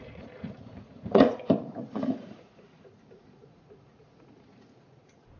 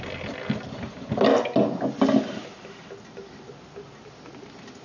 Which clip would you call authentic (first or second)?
second